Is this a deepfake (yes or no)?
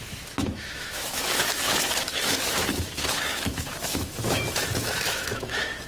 yes